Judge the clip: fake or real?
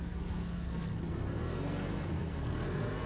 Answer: fake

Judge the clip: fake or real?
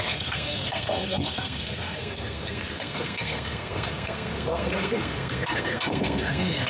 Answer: fake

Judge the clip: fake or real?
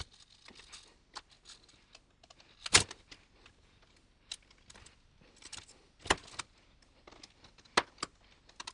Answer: real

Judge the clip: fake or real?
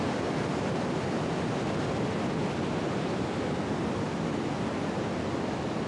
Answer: real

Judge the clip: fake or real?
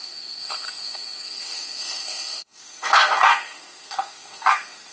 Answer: fake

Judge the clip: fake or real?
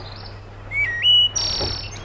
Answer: real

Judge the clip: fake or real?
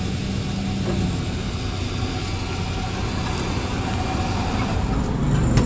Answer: real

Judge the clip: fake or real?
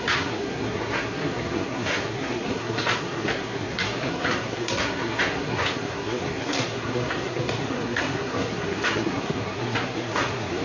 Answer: fake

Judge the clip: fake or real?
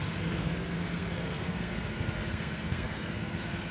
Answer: fake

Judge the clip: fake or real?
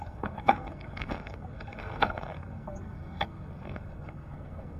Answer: fake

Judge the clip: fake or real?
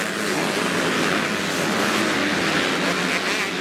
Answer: real